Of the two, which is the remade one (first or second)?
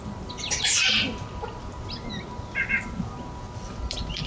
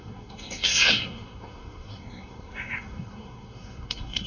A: second